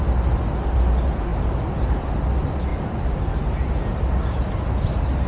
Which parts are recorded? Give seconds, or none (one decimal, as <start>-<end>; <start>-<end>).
0.0-1.3; 2.1-2.7; 3.3-5.3